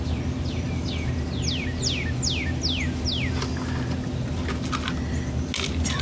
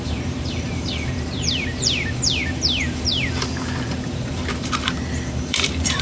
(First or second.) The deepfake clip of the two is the second